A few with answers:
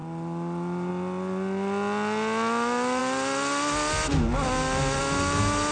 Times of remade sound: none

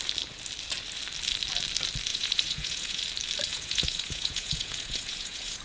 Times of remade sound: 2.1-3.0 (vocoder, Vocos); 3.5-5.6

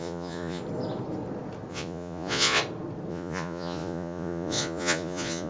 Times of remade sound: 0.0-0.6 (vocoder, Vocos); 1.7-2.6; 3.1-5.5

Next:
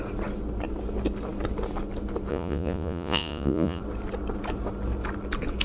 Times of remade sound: 2.3-3.8 (vocoder, Vocos)

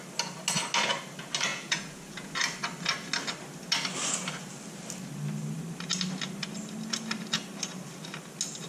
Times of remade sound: 1.5-2.3 (vocoder, Vocos)

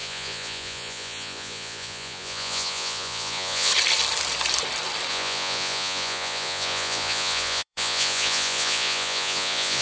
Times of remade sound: 0.0-3.7 (vocoder, Vocos); 5.1-9.8